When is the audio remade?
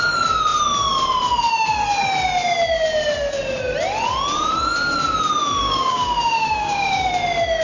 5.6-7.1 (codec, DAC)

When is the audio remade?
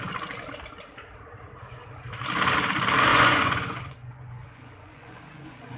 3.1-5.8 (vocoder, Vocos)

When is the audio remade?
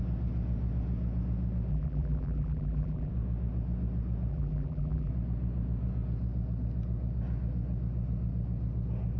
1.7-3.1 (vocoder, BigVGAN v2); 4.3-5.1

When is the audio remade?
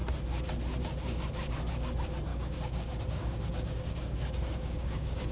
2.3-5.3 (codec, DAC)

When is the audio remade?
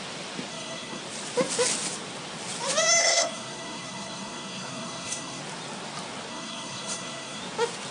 0.5-1.0 (codec, SNAC); 3.0-5.4; 6.3-7.4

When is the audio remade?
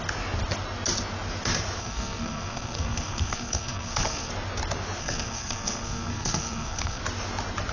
1.8-4.3 (codec, SNAC); 5.0-7.0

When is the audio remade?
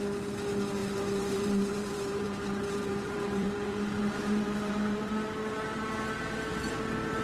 0.8-5.1 (vocoder, BigVGAN v2); 6.5-7.2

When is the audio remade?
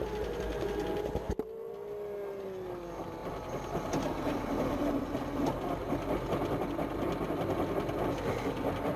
3.2-5.0 (vocoder, BigVGAN v2)